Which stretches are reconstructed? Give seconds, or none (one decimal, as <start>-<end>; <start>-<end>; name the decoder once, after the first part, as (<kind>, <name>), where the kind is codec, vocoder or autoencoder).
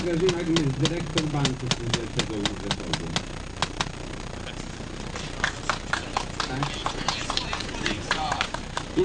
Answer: 6.8-8.6 (vocoder, Vocos)